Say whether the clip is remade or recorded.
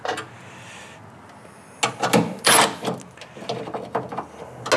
recorded